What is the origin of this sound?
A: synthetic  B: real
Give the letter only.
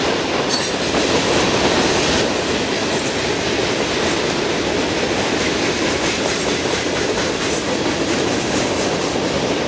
B